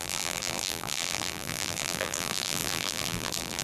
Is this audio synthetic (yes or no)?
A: yes